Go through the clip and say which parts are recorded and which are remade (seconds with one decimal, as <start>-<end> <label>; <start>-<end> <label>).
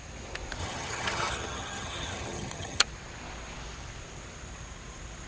0.0-0.6 recorded; 0.6-2.8 remade; 2.8-5.3 recorded